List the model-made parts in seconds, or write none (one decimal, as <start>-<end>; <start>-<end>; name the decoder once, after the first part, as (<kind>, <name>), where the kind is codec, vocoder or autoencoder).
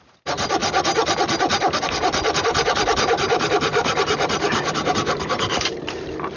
0.0-0.6 (vocoder, BigVGAN v2); 2.4-6.4